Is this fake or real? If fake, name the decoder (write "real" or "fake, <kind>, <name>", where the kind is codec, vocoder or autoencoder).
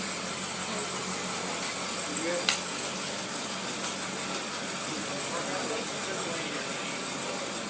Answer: real